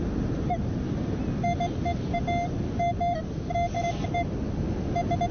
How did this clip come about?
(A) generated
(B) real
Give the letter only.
B